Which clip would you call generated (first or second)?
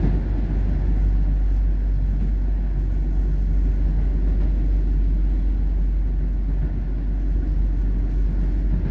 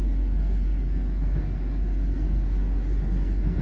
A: second